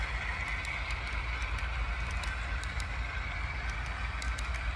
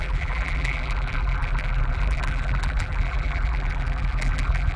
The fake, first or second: second